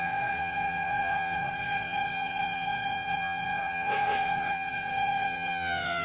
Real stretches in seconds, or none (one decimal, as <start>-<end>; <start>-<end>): none